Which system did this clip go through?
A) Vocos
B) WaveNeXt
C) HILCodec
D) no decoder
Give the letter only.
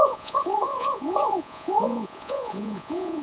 A